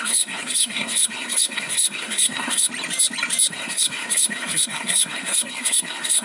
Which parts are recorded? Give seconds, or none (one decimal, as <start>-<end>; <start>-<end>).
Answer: 2.7-3.5